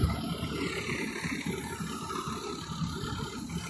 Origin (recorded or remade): recorded